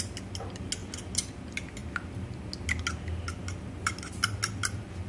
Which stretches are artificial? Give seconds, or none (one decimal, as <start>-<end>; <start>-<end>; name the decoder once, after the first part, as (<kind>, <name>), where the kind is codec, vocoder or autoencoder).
none